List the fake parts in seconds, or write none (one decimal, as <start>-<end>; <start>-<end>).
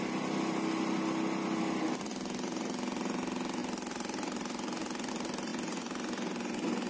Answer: none